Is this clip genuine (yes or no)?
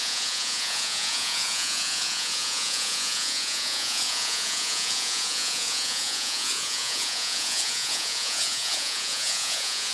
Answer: no